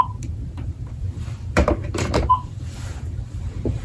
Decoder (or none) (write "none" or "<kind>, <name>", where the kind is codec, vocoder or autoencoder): vocoder, BigVGAN v2